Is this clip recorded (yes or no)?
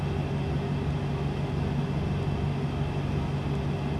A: yes